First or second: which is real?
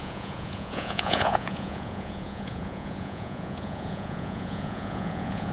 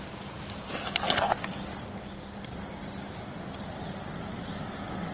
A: second